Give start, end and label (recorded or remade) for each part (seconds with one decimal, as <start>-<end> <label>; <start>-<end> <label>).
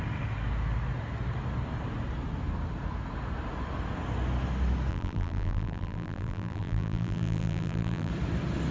0.0-4.9 recorded; 4.9-8.1 remade; 8.1-8.7 recorded